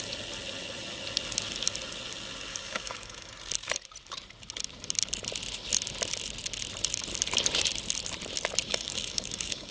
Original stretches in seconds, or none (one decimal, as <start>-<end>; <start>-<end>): 0.0-2.5; 3.3-8.7